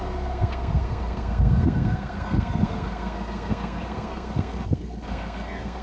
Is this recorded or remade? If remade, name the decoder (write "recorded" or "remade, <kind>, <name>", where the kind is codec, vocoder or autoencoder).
remade, codec, SNAC